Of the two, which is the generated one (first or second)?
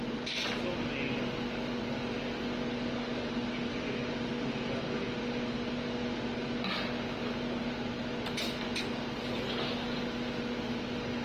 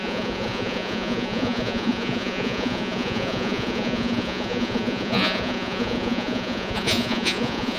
second